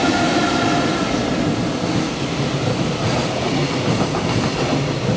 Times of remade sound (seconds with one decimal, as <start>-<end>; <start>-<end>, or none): 3.0-3.5